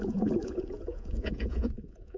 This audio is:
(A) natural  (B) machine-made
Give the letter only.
B